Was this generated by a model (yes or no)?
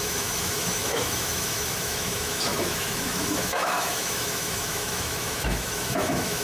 yes